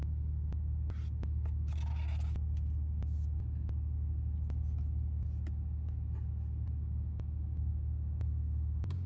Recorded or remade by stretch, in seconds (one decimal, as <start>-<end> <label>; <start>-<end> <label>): 0.0-6.8 recorded; 6.8-9.1 remade